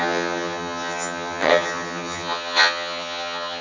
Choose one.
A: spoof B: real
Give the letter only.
A